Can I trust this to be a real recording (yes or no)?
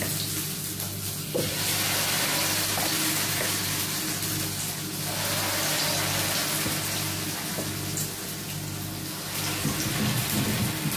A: yes